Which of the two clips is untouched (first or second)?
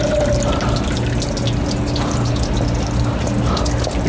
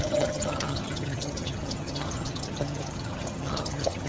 first